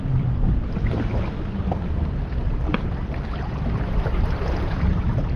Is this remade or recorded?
remade